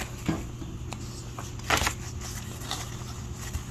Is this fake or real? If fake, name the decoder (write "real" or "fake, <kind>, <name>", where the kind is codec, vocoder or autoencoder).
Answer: real